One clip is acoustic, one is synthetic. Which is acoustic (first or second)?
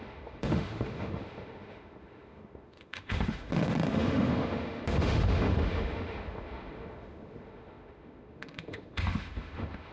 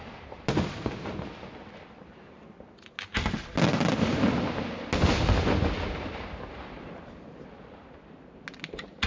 second